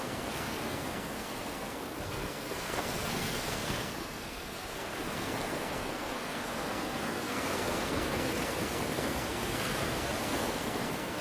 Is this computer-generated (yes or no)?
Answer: yes